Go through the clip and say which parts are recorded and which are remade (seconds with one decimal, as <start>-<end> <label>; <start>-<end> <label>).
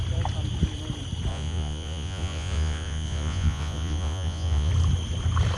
0.0-1.3 recorded; 1.3-4.7 remade; 4.7-5.6 recorded